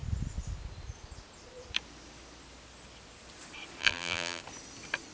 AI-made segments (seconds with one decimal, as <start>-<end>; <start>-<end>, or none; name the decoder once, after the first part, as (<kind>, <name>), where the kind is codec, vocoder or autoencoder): 3.8-4.4 (vocoder, BigVGAN v2)